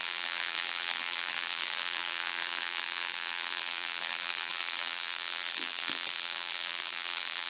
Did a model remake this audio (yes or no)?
yes